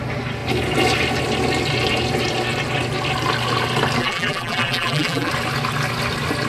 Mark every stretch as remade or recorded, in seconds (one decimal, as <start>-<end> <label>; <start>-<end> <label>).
0.0-4.0 recorded; 4.0-5.3 remade; 5.3-6.5 recorded